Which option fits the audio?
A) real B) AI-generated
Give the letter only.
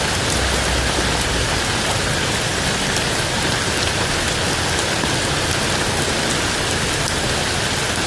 A